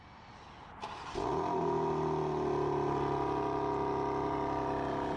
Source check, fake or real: real